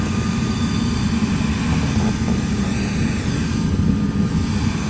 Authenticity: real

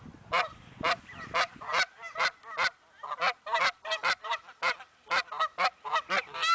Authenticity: real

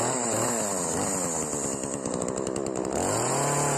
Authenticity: real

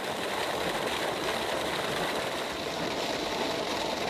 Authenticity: real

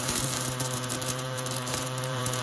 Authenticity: fake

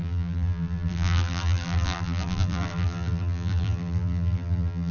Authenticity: fake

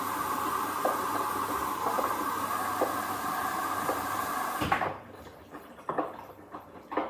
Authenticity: real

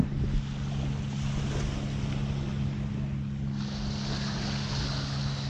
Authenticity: real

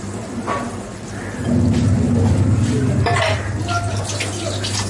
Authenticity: real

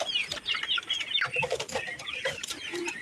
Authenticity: fake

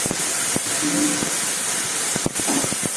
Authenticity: real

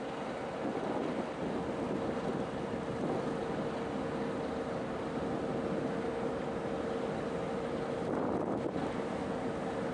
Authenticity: real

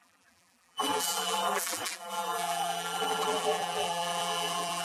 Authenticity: fake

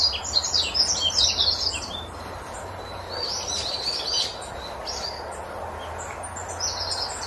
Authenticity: real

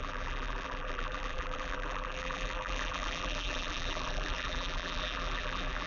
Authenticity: fake